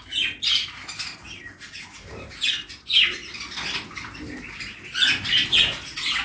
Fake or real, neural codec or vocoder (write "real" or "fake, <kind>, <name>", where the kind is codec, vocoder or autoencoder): real